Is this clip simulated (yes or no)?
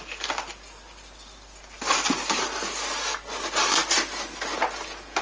no